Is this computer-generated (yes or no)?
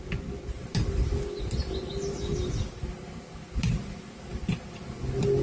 no